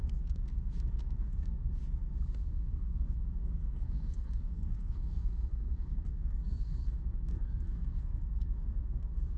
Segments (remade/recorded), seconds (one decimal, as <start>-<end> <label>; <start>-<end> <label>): 0.0-1.8 remade; 1.8-2.4 recorded; 2.4-9.4 remade

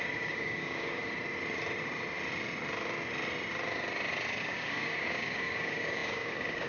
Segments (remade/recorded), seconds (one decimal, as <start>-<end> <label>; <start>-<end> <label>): 0.0-1.0 remade; 1.0-4.4 recorded; 4.4-6.7 remade

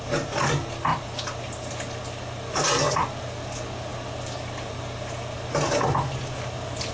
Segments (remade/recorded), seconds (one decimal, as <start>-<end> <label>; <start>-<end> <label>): 0.0-6.9 recorded

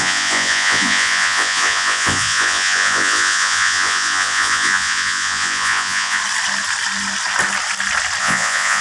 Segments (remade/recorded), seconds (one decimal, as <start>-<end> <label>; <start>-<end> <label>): 0.0-6.2 remade; 6.2-8.2 recorded; 8.2-8.8 remade